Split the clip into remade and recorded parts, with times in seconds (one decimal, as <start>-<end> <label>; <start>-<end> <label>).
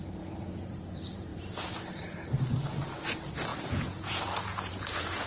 0.0-3.5 recorded; 3.5-5.3 remade